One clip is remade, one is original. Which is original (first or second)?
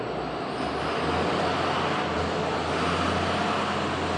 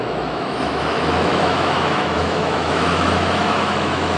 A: first